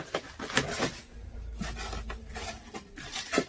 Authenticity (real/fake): real